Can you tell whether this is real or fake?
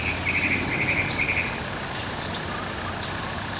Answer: real